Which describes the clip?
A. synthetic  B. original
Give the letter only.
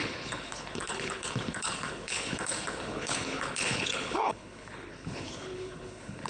A